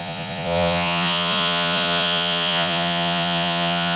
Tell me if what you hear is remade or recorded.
remade